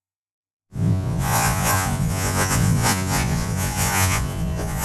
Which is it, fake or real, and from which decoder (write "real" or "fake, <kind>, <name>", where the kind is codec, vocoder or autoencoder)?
fake, vocoder, Vocos